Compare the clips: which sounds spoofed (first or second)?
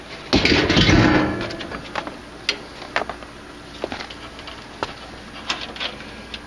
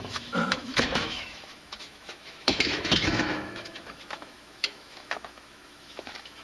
second